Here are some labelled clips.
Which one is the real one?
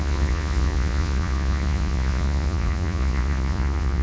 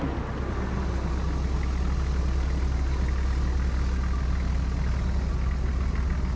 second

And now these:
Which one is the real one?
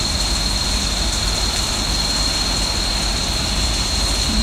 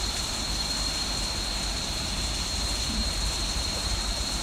first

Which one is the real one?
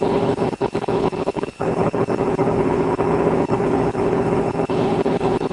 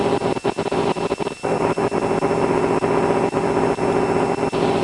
second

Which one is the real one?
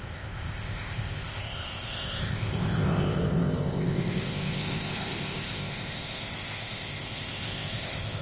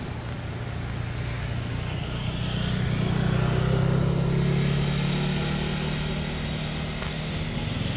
second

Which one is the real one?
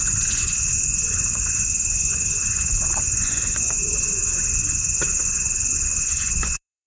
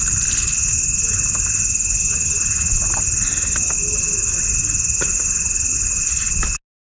second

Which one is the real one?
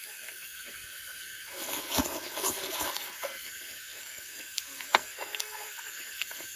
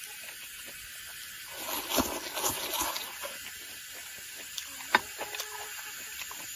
second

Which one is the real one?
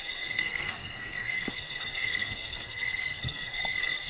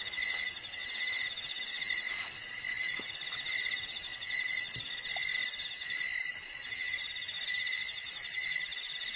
second